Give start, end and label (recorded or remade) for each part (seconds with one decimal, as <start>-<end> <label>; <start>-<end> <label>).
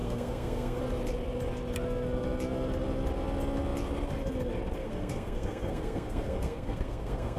0.0-0.8 remade; 0.8-4.8 recorded; 4.8-7.4 remade